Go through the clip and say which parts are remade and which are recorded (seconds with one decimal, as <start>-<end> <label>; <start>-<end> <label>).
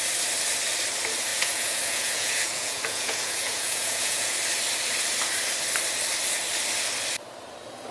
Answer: 0.0-1.3 recorded; 1.3-4.4 remade; 4.4-7.9 recorded